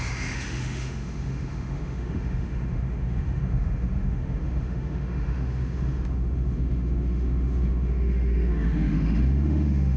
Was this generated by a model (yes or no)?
yes